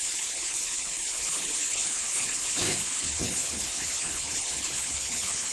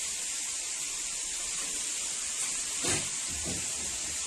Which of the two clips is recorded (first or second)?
second